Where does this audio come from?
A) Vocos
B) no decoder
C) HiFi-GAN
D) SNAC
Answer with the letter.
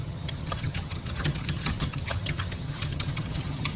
C